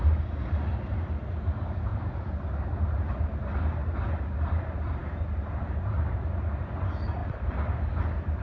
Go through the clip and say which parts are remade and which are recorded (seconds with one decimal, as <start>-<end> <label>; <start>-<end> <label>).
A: 0.0-1.9 recorded; 1.9-2.6 remade; 2.6-7.2 recorded; 7.2-8.0 remade; 8.0-8.4 recorded